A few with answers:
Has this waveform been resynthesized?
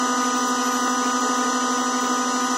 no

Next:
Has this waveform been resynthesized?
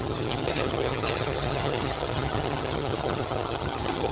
yes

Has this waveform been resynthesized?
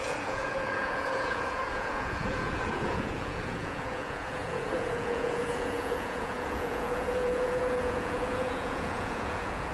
yes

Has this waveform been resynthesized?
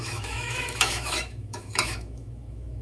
yes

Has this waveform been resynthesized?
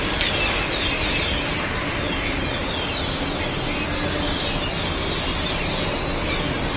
no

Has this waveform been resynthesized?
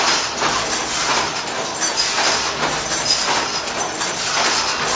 no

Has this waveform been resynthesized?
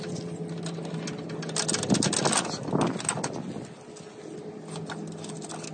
no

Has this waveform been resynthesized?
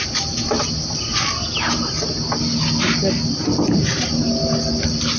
no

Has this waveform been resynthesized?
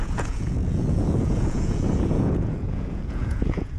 yes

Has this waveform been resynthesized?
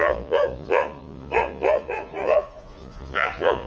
yes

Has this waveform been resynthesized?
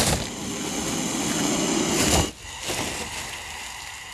no